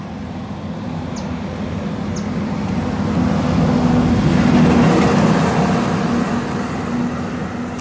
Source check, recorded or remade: recorded